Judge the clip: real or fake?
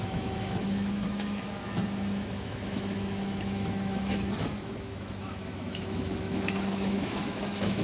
fake